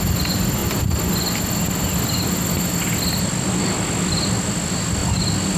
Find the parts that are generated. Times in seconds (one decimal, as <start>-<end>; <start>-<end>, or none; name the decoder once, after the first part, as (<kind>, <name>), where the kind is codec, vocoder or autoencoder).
none

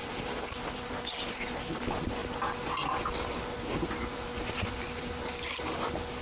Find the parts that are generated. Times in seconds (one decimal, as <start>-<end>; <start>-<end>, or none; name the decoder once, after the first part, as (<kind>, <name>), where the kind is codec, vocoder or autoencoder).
none

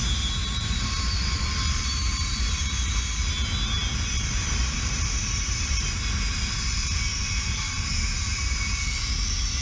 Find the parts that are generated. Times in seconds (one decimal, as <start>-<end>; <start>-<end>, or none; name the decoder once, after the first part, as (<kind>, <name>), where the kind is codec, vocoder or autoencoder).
0.4-3.3 (vocoder, BigVGAN v2); 4.6-7.9

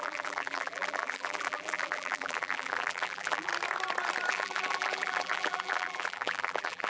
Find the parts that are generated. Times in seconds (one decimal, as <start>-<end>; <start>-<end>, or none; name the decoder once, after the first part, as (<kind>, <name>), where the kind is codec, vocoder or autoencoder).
0.0-3.5 (vocoder, BigVGAN v2); 4.3-6.9

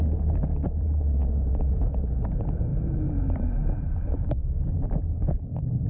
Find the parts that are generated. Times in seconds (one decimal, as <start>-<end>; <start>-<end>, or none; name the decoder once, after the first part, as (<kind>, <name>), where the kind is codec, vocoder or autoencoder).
0.0-5.9 (vocoder, BigVGAN v2)

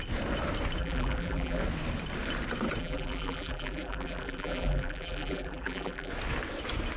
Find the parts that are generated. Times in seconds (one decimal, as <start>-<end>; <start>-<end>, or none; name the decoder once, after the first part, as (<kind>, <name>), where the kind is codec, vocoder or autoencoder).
0.8-1.6 (vocoder, BigVGAN v2); 2.8-6.1

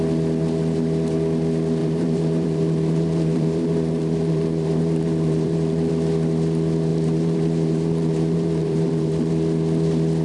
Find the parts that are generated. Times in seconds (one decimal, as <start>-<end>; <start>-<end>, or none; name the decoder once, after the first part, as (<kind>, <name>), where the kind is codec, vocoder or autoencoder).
1.8-5.9 (vocoder, BigVGAN v2); 6.9-9.3